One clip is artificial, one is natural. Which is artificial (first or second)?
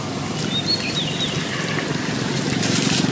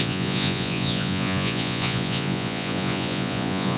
second